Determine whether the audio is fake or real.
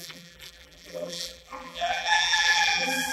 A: fake